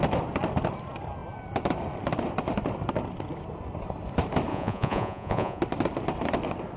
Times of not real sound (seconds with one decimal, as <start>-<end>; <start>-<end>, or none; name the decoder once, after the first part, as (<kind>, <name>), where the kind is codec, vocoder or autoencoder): 4.5-5.6 (vocoder, Vocos)